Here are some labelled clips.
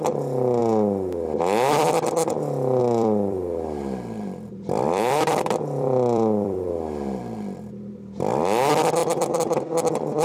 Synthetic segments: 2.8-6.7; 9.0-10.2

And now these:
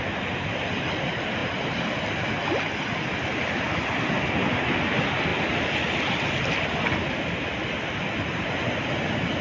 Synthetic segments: none

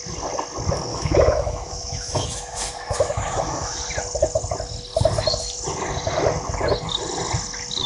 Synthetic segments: 0.9-3.8

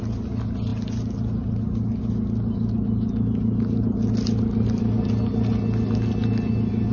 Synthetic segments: none